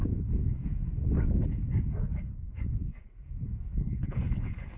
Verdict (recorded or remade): remade